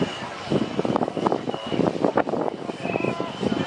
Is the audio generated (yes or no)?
no